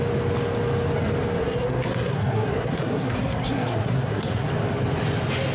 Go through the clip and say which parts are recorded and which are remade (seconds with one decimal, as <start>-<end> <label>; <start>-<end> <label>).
0.0-1.4 recorded; 1.4-4.5 remade; 4.5-5.5 recorded